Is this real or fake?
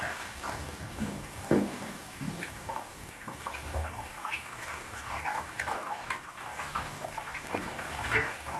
fake